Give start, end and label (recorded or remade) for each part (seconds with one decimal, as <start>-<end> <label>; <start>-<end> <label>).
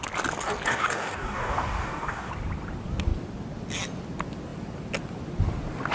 0.0-0.7 recorded; 0.7-2.3 remade; 2.3-5.9 recorded